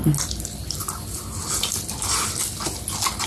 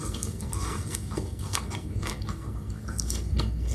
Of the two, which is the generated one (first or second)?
second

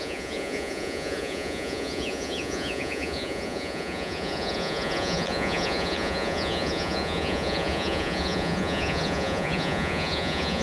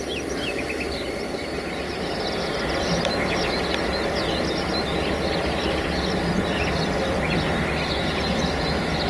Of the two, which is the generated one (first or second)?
first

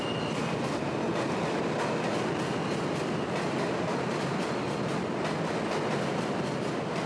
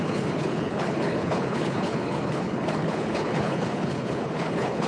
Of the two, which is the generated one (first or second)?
second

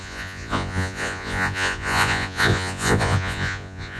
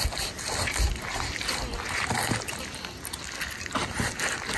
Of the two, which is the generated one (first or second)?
first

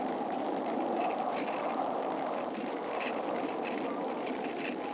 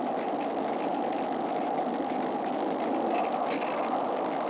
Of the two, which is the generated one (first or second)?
first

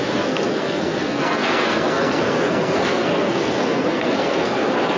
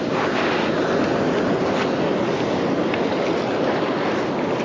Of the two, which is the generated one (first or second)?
first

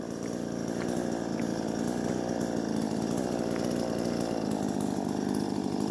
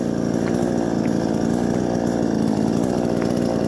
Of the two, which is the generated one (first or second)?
first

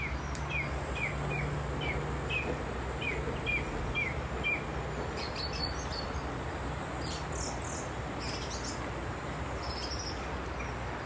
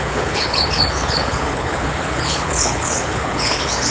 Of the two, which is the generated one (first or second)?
second